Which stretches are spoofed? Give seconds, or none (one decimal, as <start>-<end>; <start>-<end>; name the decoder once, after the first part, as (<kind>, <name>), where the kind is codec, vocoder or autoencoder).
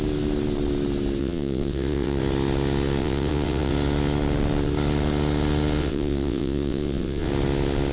1.2-2.2 (vocoder, WaveNeXt); 3.0-3.7; 5.8-7.3